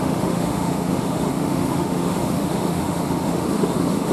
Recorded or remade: remade